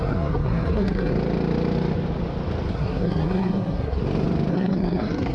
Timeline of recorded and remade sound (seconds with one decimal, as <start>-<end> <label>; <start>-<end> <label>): 0.0-1.1 remade; 1.1-2.7 recorded; 2.7-4.0 remade; 4.0-4.5 recorded; 4.5-5.3 remade